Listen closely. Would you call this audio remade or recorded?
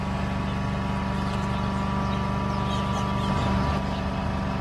recorded